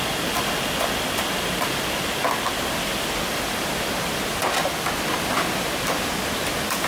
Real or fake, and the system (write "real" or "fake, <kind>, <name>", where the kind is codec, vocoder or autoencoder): real